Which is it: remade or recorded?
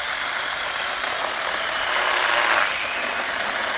recorded